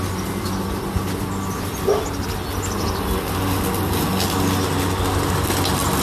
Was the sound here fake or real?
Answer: real